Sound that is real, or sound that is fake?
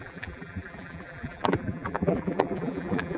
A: fake